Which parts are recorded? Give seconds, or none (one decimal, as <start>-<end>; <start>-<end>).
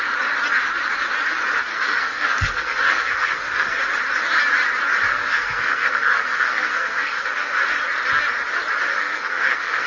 0.0-1.7; 3.8-5.1; 7.6-8.9